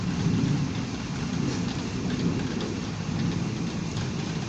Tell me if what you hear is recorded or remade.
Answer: recorded